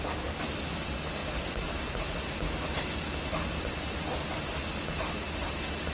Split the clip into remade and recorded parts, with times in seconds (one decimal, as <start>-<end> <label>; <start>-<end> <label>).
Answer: 0.0-5.9 recorded